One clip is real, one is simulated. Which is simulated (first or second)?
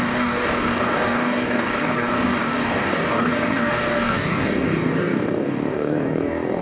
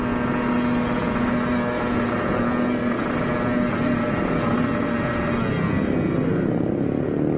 first